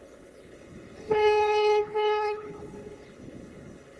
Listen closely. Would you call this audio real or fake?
fake